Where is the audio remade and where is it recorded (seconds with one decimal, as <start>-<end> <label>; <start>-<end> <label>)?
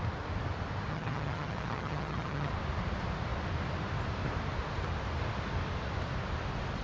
0.0-0.9 recorded; 0.9-2.5 remade; 2.5-6.8 recorded